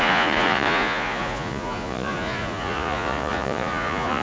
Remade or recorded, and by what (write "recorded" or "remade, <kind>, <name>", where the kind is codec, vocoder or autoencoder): remade, vocoder, Vocos